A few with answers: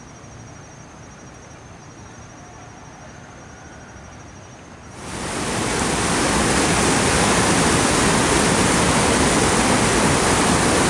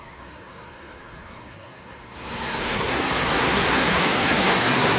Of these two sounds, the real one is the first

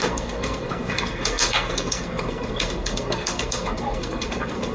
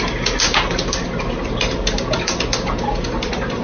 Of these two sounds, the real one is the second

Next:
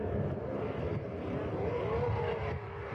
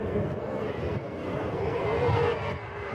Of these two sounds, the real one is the first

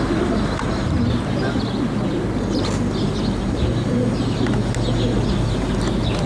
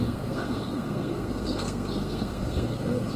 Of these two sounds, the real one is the first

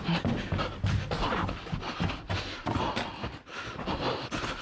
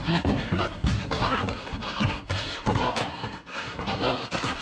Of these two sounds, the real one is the first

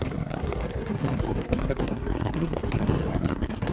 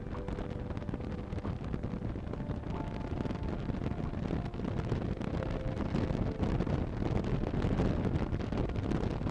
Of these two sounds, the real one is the second